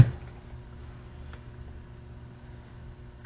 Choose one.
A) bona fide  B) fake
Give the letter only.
A